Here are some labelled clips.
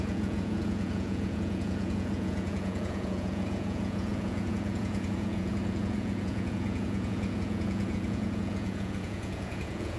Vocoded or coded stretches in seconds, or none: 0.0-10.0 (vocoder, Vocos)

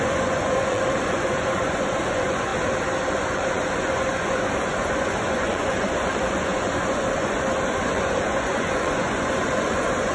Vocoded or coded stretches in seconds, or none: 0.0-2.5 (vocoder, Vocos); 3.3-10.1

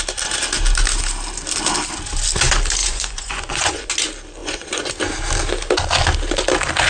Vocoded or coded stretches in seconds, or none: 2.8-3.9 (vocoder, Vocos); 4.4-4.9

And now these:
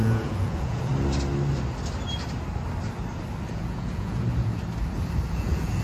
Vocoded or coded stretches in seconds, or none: 0.0-0.9 (vocoder, Vocos); 3.5-4.6; 5.3-5.8